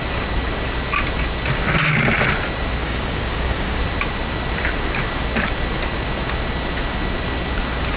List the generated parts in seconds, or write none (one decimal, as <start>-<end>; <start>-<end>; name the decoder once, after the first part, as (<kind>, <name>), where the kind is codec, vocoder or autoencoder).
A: 2.8-3.8 (codec, DAC)